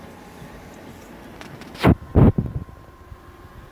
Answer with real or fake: real